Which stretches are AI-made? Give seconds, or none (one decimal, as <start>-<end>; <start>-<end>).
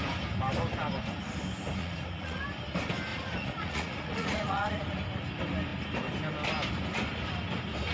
1.8-2.4; 3.1-4.8